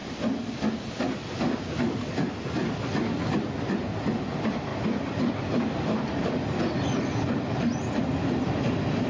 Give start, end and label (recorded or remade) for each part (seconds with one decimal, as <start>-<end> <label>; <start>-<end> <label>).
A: 0.0-9.1 recorded

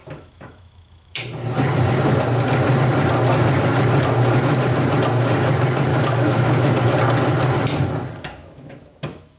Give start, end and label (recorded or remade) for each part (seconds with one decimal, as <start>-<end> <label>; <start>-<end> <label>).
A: 0.0-1.2 remade; 1.2-5.9 recorded; 5.9-6.7 remade; 6.7-8.4 recorded; 8.4-9.4 remade